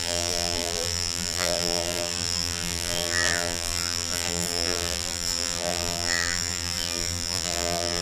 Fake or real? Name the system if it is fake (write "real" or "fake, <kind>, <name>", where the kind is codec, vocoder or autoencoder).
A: fake, vocoder, BigVGAN v2